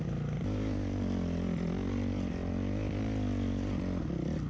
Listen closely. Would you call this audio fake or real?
real